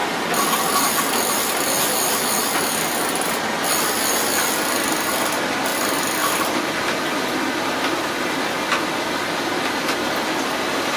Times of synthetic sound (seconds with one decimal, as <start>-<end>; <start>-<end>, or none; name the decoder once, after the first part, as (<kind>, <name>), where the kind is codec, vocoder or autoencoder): none